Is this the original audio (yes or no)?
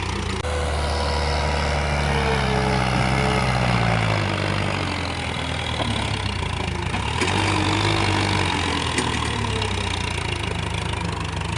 yes